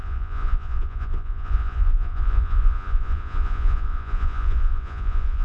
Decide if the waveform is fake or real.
fake